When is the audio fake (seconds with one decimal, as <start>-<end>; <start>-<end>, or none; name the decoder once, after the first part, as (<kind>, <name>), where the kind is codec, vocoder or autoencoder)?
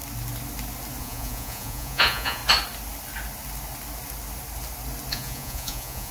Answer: 1.0-2.4 (vocoder, Vocos); 5.1-6.1